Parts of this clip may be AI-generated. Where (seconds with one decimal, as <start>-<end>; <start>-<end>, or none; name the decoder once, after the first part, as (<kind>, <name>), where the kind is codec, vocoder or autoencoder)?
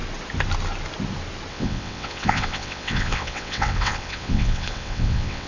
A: 1.5-5.5 (vocoder, WaveNeXt)